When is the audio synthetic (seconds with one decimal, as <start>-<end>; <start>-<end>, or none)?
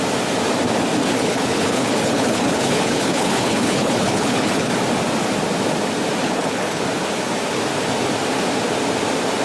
1.0-4.7; 6.2-6.8